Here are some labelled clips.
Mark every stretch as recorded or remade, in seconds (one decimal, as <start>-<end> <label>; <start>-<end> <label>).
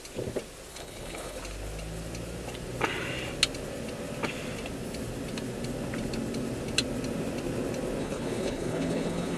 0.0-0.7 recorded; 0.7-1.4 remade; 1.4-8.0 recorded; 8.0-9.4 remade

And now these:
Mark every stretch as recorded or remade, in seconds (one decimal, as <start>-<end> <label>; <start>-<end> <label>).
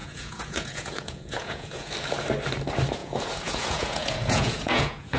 0.0-1.9 remade; 1.9-3.0 recorded; 3.0-5.2 remade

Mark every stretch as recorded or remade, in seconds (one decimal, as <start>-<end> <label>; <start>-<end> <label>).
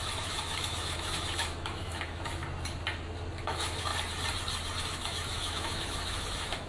0.0-2.4 remade; 2.4-3.4 recorded; 3.4-3.9 remade; 3.9-4.8 recorded; 4.8-6.7 remade